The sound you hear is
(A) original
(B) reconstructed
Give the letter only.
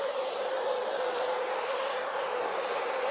A